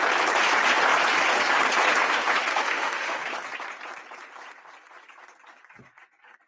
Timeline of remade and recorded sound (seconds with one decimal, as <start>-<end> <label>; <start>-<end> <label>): 0.0-2.5 recorded; 2.5-3.2 remade; 3.2-6.5 recorded